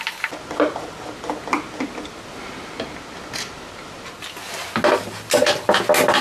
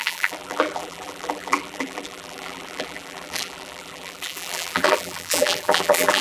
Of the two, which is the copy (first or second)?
second